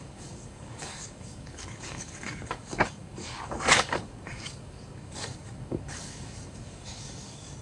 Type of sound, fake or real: fake